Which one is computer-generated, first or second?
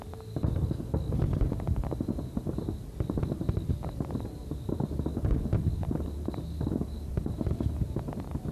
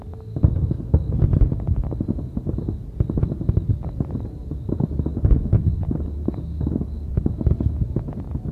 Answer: first